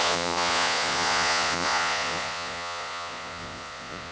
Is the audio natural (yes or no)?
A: no